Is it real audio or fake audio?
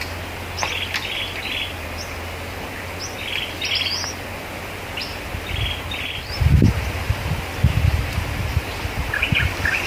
real